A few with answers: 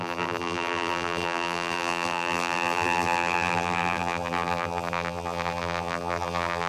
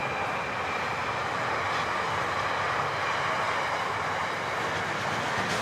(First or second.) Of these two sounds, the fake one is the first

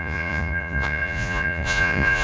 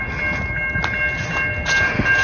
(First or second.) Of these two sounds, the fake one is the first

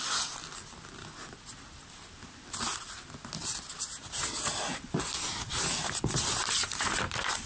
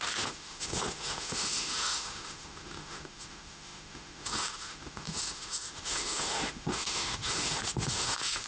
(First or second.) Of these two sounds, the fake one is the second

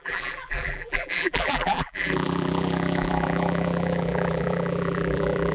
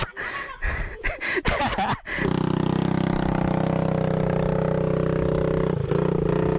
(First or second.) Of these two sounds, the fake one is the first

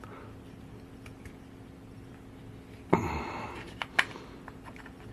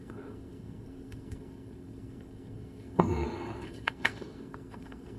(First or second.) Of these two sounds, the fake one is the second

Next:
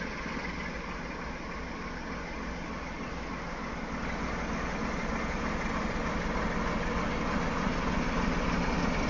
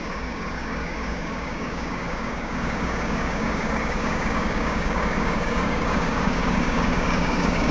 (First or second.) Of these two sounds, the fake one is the second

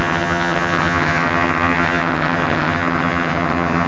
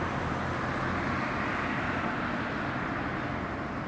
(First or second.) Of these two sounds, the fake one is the first